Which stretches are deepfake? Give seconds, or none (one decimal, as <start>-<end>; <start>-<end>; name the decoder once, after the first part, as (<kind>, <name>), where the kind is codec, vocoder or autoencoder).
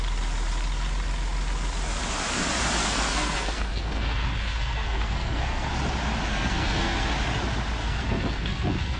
2.8-5.7 (codec, SNAC); 6.3-7.1; 7.8-9.0